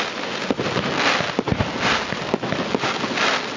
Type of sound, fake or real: real